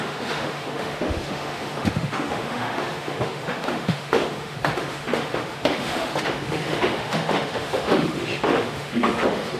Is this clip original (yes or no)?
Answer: no